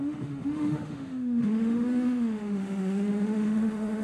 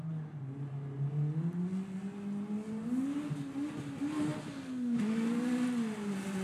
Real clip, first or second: second